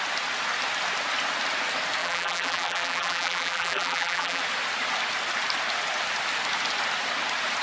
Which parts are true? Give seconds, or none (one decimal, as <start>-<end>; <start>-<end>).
0.0-2.0; 4.4-7.6